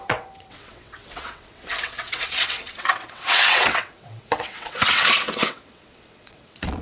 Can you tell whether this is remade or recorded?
remade